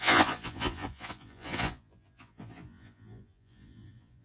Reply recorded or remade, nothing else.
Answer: remade